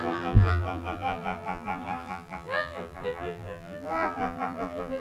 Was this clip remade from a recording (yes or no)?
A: yes